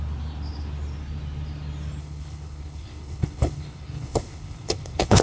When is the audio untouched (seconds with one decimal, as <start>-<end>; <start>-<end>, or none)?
0.0-2.0